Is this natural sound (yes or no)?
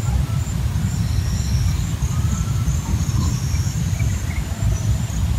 yes